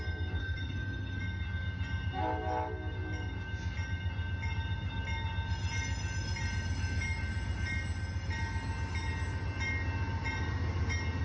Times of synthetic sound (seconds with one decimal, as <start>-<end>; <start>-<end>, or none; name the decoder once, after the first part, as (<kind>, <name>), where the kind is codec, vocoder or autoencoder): 0.4-1.2 (codec, SNAC)